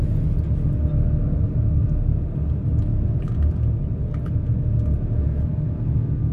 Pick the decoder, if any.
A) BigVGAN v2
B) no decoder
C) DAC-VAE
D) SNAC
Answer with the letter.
B